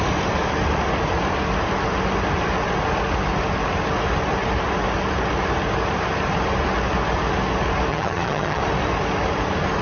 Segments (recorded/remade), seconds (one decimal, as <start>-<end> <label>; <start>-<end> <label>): 0.0-7.9 recorded; 7.9-8.6 remade; 8.6-9.8 recorded